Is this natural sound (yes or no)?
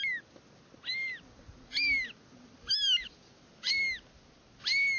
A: yes